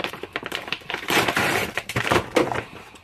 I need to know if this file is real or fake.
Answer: fake